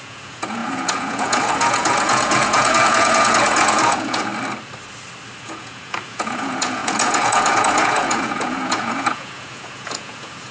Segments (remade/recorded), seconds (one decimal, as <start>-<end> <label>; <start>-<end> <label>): 0.0-4.3 remade; 4.3-5.4 recorded; 5.4-10.5 remade